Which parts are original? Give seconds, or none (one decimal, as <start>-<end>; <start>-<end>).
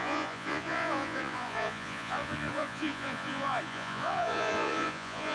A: none